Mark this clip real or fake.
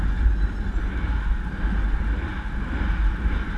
real